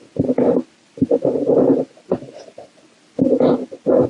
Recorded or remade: recorded